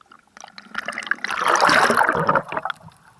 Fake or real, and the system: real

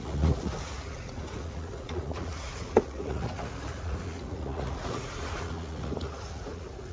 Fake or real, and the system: fake, vocoder, Vocos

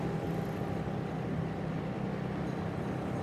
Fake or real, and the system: real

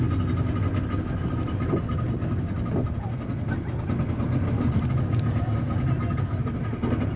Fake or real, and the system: real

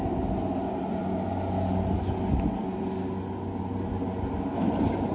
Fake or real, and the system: real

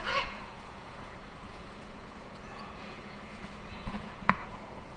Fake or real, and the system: fake, vocoder, Vocos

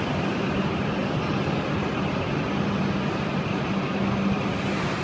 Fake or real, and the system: real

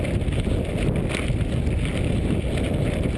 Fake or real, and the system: real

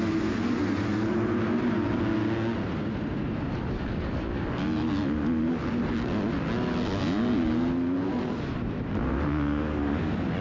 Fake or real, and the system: real